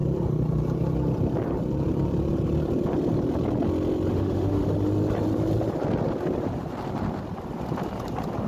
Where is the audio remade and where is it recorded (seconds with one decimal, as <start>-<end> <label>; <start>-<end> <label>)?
0.0-4.1 recorded; 4.1-4.6 remade; 4.6-8.5 recorded